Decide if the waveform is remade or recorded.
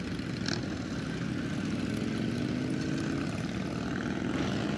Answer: recorded